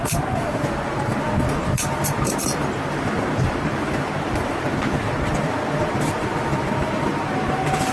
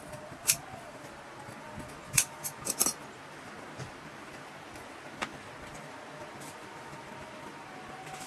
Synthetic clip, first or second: first